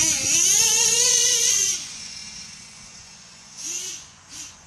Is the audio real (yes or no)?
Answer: no